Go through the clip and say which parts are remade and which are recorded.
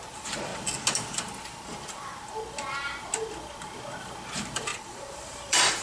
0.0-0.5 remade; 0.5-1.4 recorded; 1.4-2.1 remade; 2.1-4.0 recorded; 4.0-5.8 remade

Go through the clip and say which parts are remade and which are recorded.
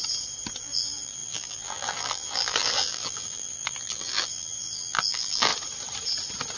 0.0-0.6 recorded; 0.6-5.5 remade; 5.5-6.6 recorded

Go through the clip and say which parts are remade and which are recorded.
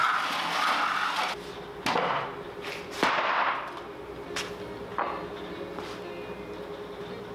0.0-4.9 recorded; 4.9-5.5 remade; 5.5-7.3 recorded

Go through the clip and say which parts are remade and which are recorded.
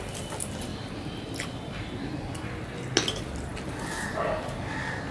0.0-0.7 recorded; 0.7-2.4 remade; 2.4-5.1 recorded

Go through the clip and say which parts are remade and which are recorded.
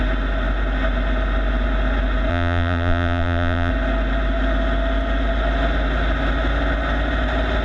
0.0-2.3 recorded; 2.3-3.7 remade; 3.7-7.6 recorded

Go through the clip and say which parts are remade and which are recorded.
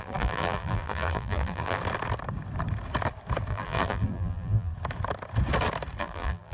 0.0-1.8 remade; 1.8-3.5 recorded; 3.5-4.7 remade; 4.7-6.0 recorded; 6.0-6.5 remade